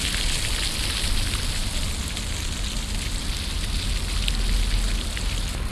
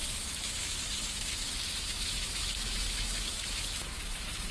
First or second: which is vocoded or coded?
second